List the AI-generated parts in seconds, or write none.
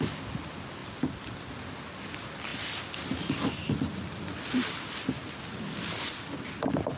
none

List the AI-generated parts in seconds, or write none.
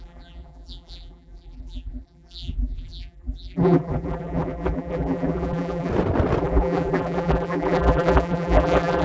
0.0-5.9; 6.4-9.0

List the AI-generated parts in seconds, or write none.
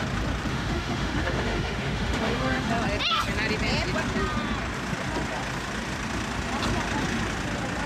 0.5-2.7